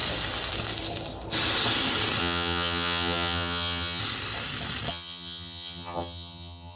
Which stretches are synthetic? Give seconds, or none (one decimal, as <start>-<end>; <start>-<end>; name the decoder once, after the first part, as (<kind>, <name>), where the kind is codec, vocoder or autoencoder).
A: 2.2-4.0 (vocoder, HiFi-GAN); 4.9-6.8